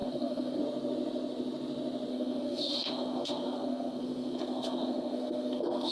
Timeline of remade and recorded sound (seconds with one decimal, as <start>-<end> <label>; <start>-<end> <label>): 0.0-0.6 remade; 0.6-2.1 recorded; 2.1-5.9 remade